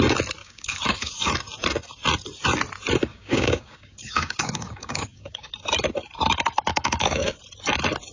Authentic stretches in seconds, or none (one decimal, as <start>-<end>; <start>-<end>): 0.0-0.4; 1.3-3.1; 5.5-6.7; 7.4-8.1